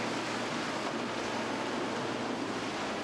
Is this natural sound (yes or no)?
yes